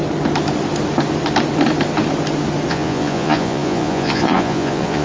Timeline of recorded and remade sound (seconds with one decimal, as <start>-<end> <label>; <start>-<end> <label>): 0.0-2.7 recorded; 2.7-5.0 remade